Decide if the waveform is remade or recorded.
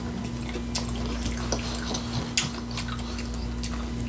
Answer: recorded